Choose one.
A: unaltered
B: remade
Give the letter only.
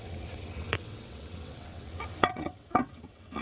B